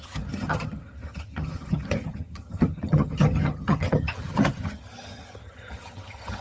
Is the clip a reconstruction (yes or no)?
yes